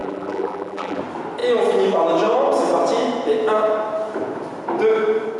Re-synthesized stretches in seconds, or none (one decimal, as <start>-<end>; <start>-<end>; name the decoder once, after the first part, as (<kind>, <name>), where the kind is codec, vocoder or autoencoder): 0.0-1.0 (vocoder, BigVGAN v2)